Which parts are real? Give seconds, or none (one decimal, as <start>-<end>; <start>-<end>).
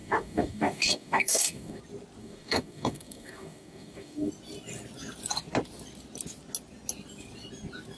1.8-2.2; 4.3-8.0